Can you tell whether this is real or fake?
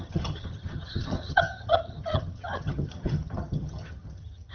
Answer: fake